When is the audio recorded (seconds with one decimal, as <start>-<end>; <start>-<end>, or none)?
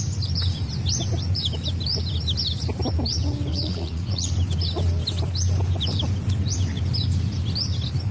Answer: 0.0-3.5; 4.3-8.1